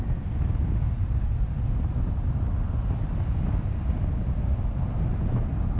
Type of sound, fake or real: real